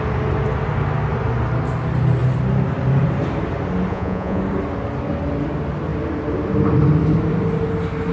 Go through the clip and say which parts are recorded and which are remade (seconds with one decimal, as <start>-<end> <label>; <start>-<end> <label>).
0.0-3.9 recorded; 3.9-4.4 remade; 4.4-8.1 recorded

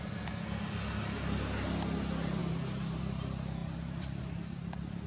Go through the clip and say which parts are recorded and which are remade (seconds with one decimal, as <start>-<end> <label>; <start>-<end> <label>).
0.0-2.4 recorded; 2.4-3.0 remade; 3.0-3.6 recorded; 3.6-4.2 remade; 4.2-5.1 recorded

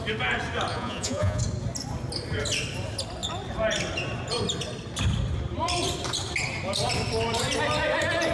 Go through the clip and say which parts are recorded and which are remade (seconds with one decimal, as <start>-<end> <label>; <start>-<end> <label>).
0.0-0.7 recorded; 0.7-1.4 remade; 1.4-8.3 recorded

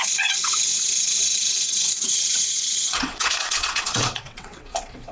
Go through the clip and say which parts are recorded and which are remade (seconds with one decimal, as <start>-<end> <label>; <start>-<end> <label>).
0.0-5.1 remade

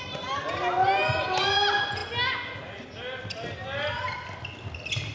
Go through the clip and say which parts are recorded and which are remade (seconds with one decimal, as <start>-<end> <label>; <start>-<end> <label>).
0.0-5.1 recorded